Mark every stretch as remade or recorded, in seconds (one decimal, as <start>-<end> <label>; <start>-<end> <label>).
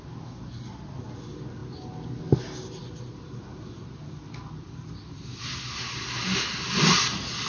0.0-7.5 recorded